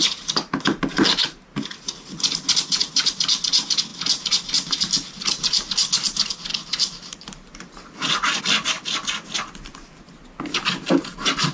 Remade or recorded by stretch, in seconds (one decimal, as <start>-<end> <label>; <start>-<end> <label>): 0.0-6.5 recorded; 6.5-8.4 remade; 8.4-11.5 recorded